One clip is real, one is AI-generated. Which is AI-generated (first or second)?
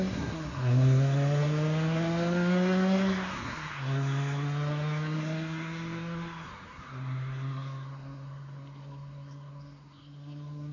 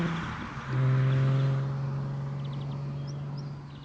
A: first